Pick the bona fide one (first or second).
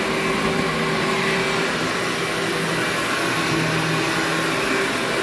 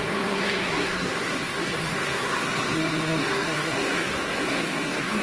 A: first